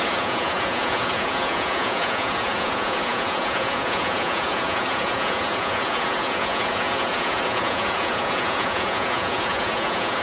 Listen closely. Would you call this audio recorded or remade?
remade